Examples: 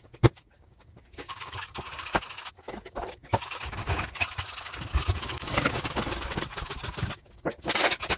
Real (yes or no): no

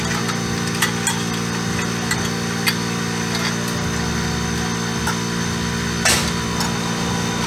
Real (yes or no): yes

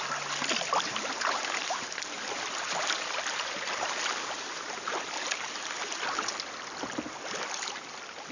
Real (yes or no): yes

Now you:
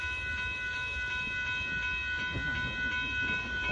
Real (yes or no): yes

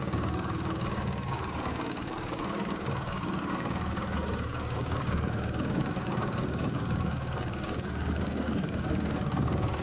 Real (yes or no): no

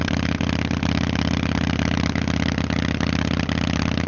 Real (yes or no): yes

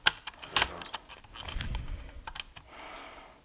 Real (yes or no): yes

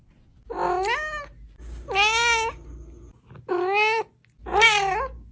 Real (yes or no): yes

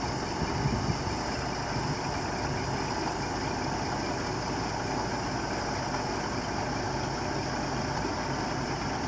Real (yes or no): yes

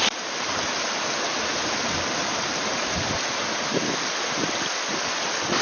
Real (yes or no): yes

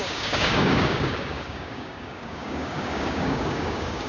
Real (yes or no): no